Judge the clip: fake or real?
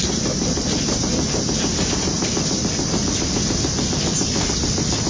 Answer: fake